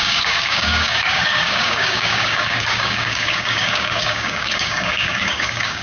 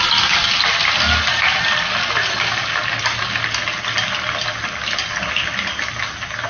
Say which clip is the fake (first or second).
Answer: first